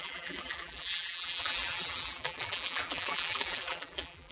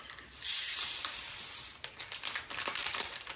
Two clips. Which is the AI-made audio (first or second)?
first